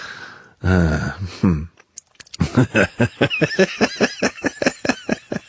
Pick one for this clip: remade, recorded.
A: recorded